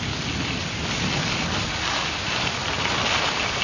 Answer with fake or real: real